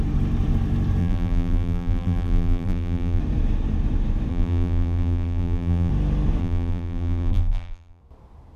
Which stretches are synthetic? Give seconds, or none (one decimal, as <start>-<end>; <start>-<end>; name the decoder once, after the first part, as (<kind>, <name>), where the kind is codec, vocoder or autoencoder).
1.0-3.2 (vocoder, BigVGAN v2); 4.3-5.9; 6.4-8.0